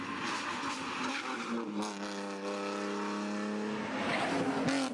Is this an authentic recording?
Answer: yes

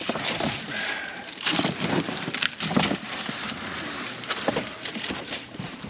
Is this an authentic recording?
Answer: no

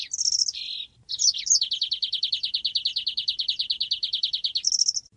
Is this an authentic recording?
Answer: yes